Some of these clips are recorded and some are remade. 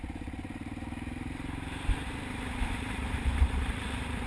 remade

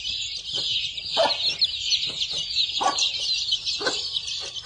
recorded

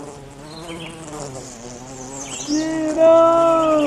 recorded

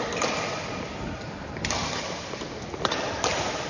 remade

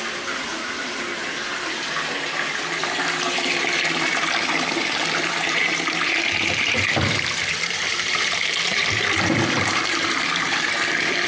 remade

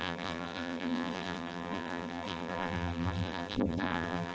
remade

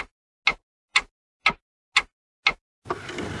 recorded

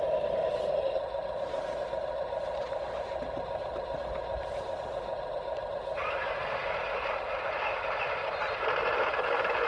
remade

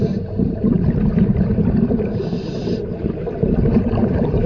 remade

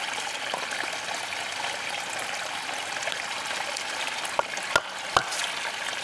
recorded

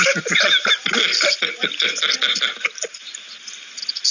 remade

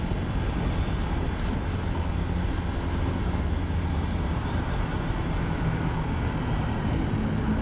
recorded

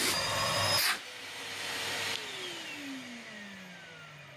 recorded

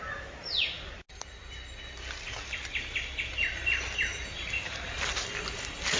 recorded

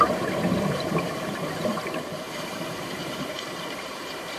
remade